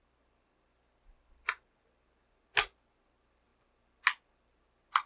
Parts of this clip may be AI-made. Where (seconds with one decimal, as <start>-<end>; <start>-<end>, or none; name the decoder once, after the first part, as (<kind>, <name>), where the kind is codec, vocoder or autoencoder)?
none